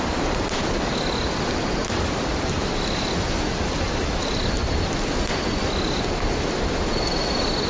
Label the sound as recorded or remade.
recorded